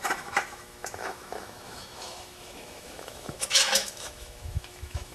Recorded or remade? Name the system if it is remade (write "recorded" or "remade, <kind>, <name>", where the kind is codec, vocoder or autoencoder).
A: remade, autoencoder, DAC-VAE